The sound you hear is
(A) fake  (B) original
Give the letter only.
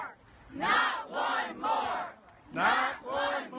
B